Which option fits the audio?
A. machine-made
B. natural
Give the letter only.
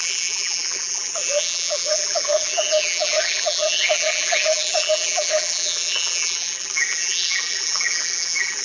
A